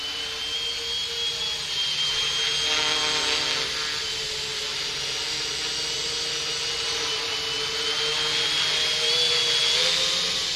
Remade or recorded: recorded